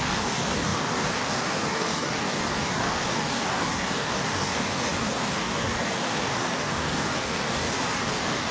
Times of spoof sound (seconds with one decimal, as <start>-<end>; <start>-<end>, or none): 0.0-8.5

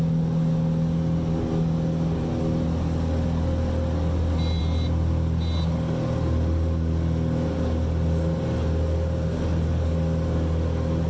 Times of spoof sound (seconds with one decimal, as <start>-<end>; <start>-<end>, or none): none